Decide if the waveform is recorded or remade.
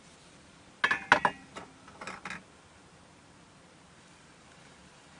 recorded